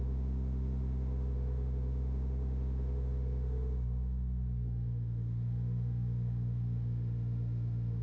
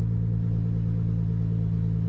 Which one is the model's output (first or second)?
first